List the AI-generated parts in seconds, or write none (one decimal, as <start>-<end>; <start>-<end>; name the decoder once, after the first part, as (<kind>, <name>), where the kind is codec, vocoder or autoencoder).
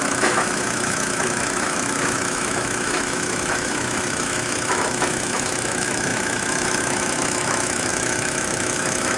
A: 0.0-9.2 (autoencoder, DAC-VAE)